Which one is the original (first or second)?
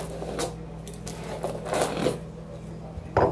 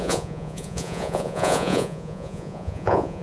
first